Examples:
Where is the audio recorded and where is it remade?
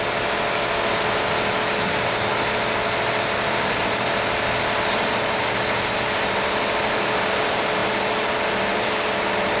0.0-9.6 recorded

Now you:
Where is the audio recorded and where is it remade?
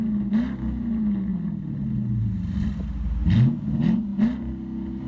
0.0-5.1 recorded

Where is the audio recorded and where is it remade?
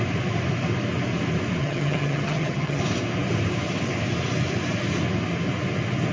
0.0-1.6 recorded; 1.6-2.8 remade; 2.8-6.1 recorded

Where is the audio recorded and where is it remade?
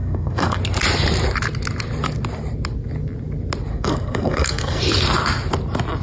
0.0-0.6 remade; 0.6-3.7 recorded; 3.7-4.8 remade; 4.8-6.0 recorded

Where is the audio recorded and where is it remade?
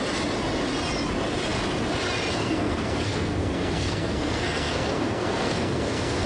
0.0-2.4 recorded; 2.4-6.3 remade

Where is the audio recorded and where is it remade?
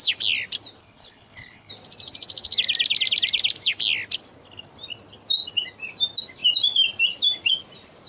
0.0-0.8 recorded; 0.8-1.7 remade; 1.7-8.1 recorded